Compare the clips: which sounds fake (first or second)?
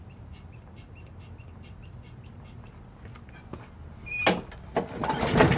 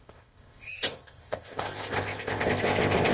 second